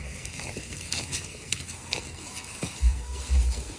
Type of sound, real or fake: fake